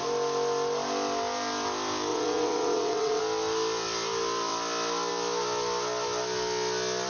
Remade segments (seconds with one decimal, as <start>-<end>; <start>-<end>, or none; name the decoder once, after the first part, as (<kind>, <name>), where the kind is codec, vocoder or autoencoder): 2.1-3.2 (vocoder, WaveNeXt)